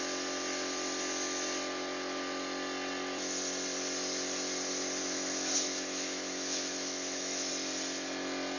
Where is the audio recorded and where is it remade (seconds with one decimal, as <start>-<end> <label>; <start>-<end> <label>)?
0.0-5.0 recorded; 5.0-7.5 remade; 7.5-8.6 recorded